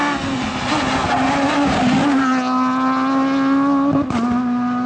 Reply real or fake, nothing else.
real